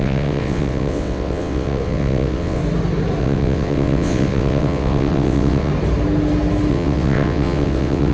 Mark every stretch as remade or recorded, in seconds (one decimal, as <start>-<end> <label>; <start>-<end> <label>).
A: 0.0-2.6 remade; 2.6-3.2 recorded; 3.2-5.7 remade; 5.7-6.7 recorded; 6.7-8.1 remade